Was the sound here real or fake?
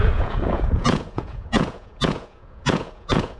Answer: fake